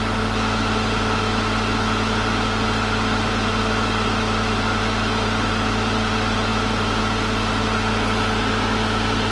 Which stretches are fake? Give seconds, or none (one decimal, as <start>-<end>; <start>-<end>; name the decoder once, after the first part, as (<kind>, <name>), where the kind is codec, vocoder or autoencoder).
none